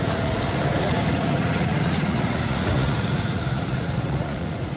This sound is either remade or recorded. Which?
remade